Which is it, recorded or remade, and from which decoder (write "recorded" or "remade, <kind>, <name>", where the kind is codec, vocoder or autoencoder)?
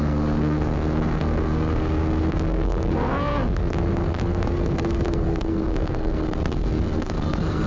remade, codec, SNAC